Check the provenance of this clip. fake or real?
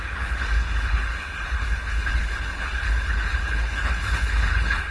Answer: fake